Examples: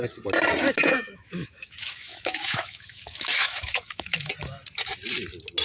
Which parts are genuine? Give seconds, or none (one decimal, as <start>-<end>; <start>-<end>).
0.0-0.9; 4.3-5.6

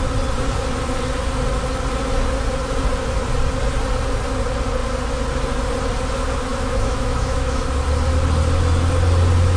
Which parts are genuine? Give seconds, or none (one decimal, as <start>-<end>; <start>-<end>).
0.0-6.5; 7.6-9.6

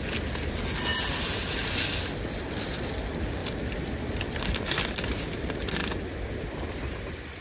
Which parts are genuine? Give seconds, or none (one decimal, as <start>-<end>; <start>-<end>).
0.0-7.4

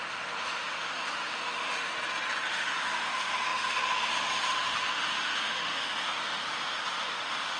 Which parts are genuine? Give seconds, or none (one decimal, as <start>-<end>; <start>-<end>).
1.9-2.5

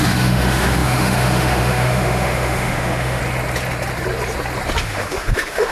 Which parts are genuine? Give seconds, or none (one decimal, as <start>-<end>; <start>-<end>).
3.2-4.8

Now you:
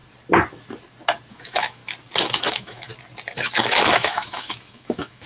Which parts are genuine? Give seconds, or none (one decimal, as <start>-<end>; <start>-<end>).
0.0-1.3; 1.8-2.5; 2.9-3.6